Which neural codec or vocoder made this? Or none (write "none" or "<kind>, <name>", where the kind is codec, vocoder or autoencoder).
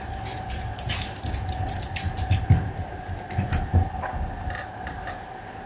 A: none